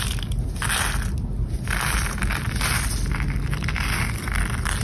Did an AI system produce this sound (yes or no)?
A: no